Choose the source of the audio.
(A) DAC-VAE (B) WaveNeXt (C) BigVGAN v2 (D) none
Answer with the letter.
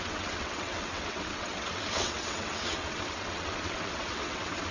B